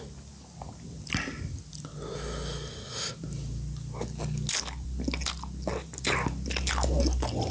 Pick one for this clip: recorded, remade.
recorded